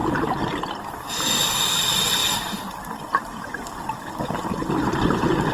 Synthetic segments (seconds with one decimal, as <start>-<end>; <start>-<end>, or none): none